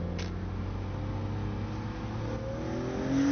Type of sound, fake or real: real